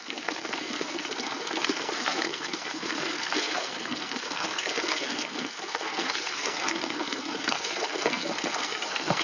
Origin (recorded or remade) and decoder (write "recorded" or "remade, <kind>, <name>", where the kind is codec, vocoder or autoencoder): remade, codec, SNAC